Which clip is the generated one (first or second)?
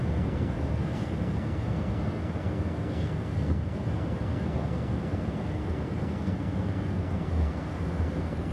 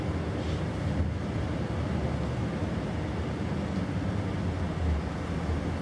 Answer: first